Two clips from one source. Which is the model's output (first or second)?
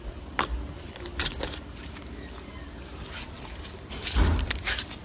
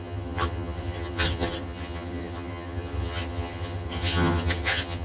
second